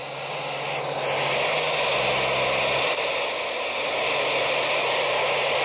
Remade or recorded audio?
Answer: recorded